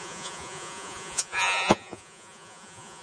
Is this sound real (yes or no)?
no